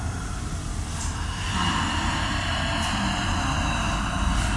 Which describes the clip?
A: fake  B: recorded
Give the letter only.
B